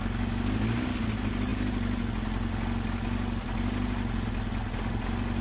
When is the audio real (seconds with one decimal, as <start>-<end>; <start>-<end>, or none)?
0.0-5.4